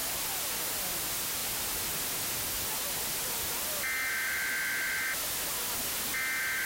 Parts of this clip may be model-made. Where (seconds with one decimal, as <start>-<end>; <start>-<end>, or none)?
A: none